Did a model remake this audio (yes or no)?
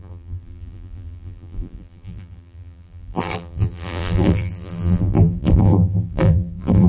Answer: yes